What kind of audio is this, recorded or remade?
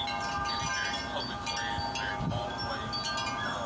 recorded